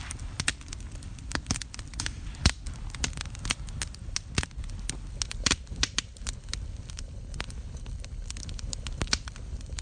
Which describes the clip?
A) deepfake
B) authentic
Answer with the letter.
B